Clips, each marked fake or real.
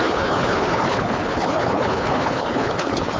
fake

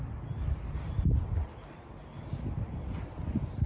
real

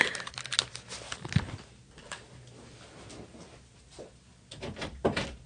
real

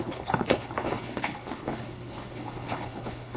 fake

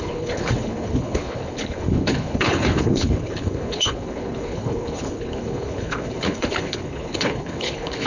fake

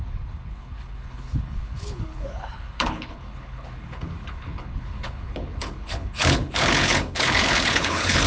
fake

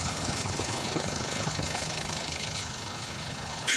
fake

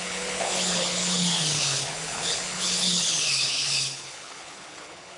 fake